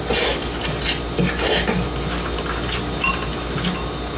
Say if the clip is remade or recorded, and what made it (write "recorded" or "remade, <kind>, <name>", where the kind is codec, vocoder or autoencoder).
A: recorded